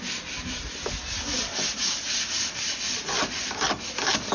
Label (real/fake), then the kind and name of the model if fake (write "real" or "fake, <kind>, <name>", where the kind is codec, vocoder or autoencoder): real